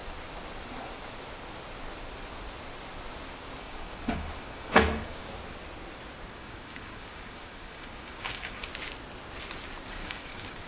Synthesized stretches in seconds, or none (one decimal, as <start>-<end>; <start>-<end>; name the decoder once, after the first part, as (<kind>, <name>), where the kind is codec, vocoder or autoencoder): 3.6-5.2 (codec, DAC); 6.4-8.7; 9.9-10.7